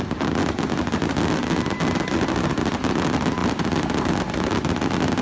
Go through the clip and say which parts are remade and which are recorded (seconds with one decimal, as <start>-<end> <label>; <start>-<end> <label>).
0.0-5.2 recorded